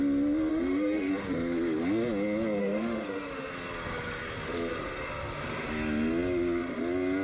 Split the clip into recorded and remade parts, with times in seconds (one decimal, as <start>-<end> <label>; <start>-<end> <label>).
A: 0.0-0.5 recorded; 0.5-1.1 remade; 1.1-2.6 recorded; 2.6-3.5 remade; 3.5-7.2 recorded